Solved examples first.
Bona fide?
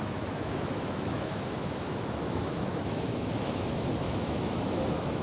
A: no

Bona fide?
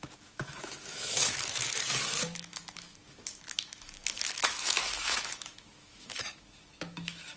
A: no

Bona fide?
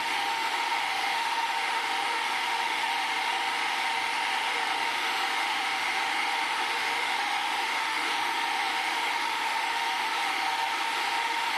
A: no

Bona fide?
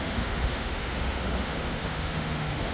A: no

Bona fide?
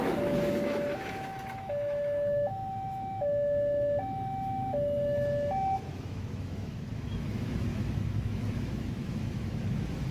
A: no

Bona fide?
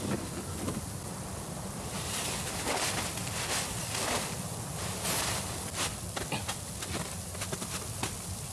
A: yes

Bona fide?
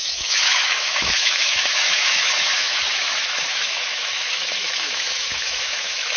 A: no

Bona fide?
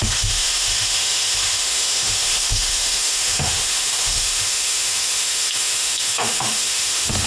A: no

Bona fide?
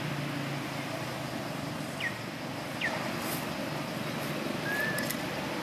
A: yes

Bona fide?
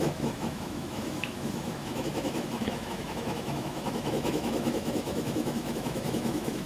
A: no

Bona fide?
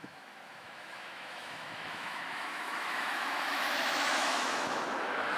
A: no